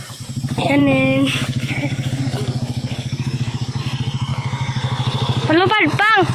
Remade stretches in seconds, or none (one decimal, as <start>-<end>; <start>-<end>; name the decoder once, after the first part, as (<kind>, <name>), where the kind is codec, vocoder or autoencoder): 0.8-3.8 (codec, DAC); 4.3-5.7